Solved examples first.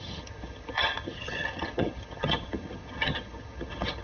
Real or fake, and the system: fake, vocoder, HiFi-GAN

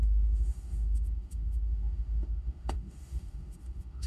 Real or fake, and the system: fake, autoencoder, DAC-VAE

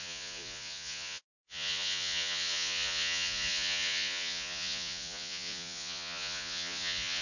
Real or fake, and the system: fake, vocoder, Vocos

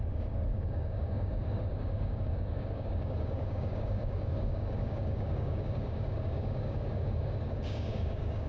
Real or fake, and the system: fake, codec, DAC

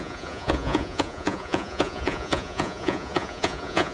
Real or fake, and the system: fake, vocoder, Vocos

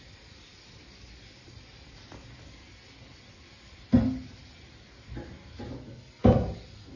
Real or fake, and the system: real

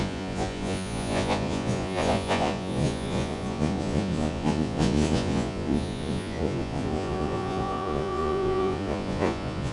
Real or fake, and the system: fake, vocoder, Vocos